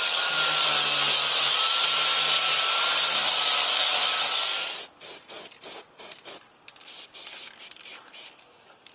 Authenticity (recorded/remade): recorded